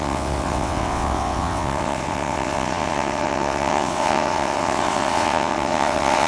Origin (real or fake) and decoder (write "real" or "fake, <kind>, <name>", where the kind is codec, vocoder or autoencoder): fake, vocoder, WaveNeXt